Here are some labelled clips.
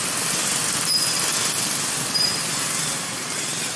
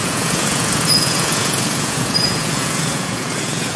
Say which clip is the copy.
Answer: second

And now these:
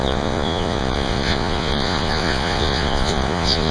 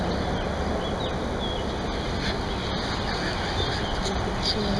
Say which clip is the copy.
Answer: first